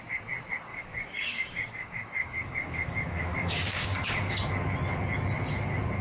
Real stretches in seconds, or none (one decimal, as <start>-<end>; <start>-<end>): 0.0-0.7; 4.3-6.0